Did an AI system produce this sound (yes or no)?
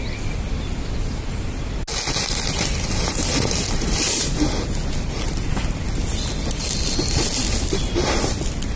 no